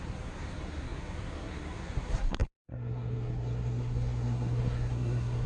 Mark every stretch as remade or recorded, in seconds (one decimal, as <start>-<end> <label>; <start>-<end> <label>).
0.0-5.5 remade